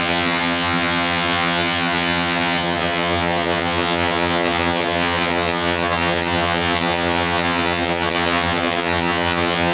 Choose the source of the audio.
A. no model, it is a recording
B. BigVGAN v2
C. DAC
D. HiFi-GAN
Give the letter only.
D